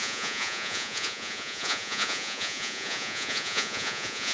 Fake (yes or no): yes